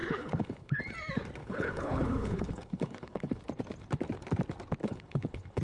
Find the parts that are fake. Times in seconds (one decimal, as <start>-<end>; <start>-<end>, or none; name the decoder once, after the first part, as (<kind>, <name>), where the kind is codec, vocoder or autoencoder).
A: 0.0-0.8 (codec, HILCodec); 1.4-3.4; 4.8-5.6